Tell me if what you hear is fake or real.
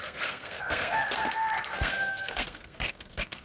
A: fake